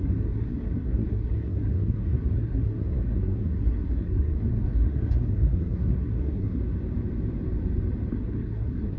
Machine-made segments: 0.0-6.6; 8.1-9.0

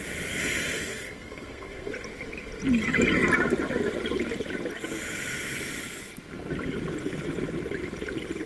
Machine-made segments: 0.9-1.9